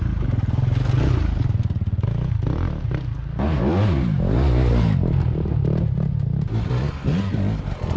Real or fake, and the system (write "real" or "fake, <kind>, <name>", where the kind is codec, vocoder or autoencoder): real